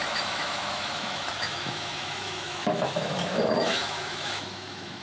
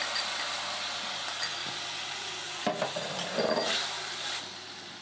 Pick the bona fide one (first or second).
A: second